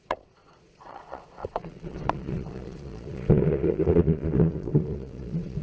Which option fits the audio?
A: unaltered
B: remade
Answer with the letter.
B